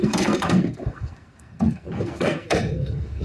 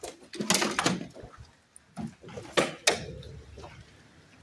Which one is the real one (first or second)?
second